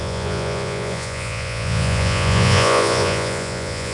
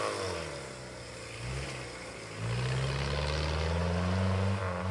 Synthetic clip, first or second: first